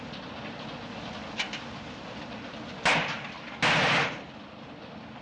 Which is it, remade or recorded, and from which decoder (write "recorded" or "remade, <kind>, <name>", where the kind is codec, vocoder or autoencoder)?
recorded